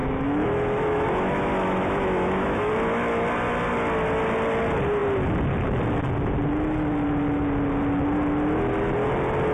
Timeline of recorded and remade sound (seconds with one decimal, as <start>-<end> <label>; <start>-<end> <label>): 0.0-2.7 remade; 2.7-9.5 recorded